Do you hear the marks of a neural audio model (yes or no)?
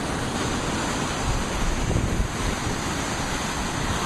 no